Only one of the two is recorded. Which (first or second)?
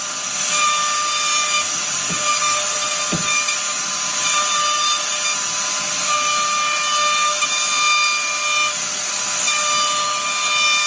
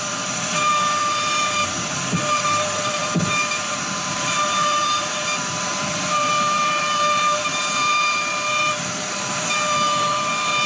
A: first